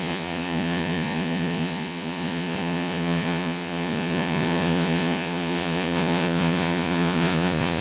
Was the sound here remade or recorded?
remade